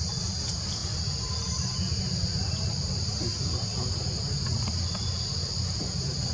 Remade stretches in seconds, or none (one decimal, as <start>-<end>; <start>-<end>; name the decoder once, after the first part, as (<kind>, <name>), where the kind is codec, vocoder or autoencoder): none